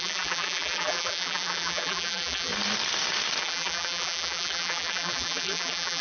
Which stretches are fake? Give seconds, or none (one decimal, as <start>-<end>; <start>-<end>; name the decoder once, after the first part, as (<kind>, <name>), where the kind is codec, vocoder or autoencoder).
0.0-2.5 (vocoder, BigVGAN v2); 3.4-6.0

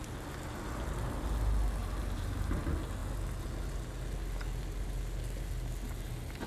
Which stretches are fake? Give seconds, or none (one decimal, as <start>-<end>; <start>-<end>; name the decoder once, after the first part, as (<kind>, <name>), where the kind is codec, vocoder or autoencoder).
1.8-2.6 (vocoder, BigVGAN v2)

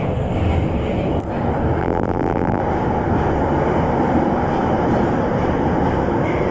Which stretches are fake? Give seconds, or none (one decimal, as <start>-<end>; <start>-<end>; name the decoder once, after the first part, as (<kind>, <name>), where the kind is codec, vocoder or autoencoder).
1.8-2.6 (vocoder, BigVGAN v2)

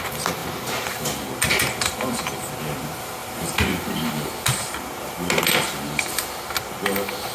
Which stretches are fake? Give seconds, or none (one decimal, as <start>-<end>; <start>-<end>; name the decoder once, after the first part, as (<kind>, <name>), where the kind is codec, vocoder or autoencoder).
3.2-4.3 (vocoder, BigVGAN v2)

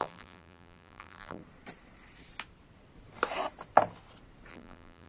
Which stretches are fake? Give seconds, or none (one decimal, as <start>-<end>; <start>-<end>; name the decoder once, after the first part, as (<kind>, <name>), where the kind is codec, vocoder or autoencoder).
0.0-1.4 (vocoder, BigVGAN v2); 4.5-5.1

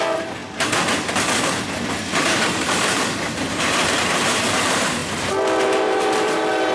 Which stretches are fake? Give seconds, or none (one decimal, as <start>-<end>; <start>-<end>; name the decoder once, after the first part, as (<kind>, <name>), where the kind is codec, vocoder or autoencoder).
0.0-0.4 (vocoder, BigVGAN v2); 2.2-5.0; 5.6-6.7

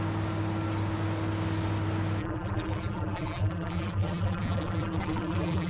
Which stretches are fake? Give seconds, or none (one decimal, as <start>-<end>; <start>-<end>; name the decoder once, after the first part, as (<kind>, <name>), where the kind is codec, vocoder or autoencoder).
2.2-5.7 (vocoder, BigVGAN v2)

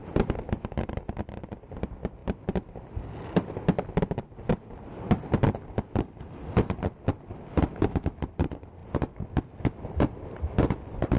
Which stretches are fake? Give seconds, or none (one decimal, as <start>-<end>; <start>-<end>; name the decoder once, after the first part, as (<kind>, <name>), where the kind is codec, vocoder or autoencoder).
none